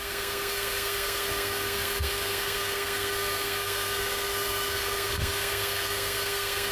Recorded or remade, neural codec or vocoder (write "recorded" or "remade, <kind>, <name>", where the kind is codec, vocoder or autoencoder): remade, codec, SNAC